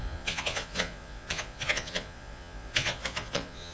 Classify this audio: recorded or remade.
remade